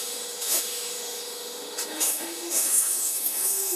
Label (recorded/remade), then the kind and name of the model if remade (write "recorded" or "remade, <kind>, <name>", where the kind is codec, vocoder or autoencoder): remade, autoencoder, DAC-VAE